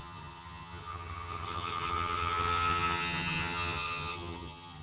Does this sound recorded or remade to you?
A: remade